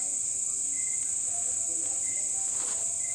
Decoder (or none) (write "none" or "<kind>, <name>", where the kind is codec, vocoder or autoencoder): none